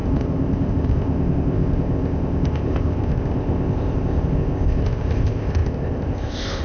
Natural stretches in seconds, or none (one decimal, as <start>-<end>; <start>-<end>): none